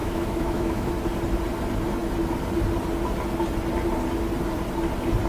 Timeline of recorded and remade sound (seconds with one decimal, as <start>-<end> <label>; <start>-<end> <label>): 0.0-0.9 remade; 0.9-5.3 recorded